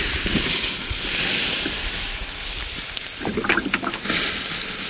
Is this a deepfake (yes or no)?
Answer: no